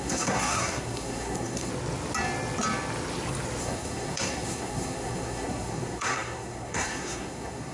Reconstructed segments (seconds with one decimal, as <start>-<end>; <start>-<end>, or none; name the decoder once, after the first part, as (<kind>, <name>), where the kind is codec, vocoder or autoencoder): 0.0-1.7 (codec, SNAC); 3.6-7.7